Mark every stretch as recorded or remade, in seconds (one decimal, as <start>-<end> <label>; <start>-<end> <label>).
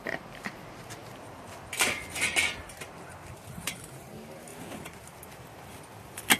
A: 0.0-4.5 remade; 4.5-5.0 recorded; 5.0-6.4 remade